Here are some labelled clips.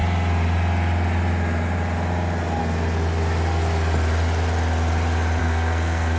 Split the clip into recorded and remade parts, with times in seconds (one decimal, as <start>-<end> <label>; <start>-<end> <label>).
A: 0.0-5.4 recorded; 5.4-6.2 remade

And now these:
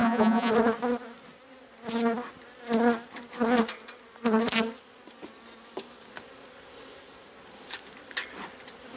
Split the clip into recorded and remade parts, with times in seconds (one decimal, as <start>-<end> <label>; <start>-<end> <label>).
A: 0.0-0.5 remade; 0.5-9.0 recorded

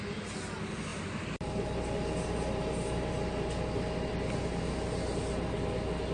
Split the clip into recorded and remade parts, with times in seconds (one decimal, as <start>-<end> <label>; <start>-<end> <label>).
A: 0.0-6.1 recorded

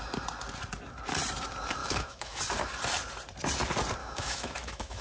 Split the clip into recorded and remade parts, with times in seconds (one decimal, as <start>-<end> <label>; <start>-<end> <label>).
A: 0.0-1.8 recorded; 1.8-2.4 remade; 2.4-4.0 recorded; 4.0-5.0 remade

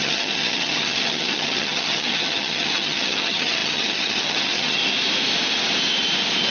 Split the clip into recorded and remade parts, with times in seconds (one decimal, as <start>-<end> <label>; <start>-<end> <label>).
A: 0.0-4.8 remade; 4.8-6.5 recorded

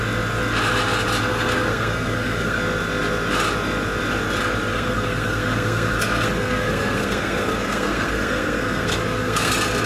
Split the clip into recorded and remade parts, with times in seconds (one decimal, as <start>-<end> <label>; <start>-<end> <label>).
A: 0.0-1.3 recorded; 1.3-2.6 remade; 2.6-4.7 recorded; 4.7-9.5 remade; 9.5-9.9 recorded

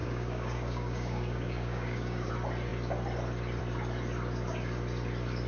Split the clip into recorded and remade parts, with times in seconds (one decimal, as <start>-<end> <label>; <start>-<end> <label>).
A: 0.0-2.3 remade; 2.3-5.5 recorded

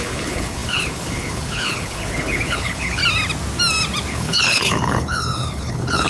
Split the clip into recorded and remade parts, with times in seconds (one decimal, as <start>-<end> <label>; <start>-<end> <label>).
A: 0.0-3.0 remade; 3.0-4.1 recorded; 4.1-6.1 remade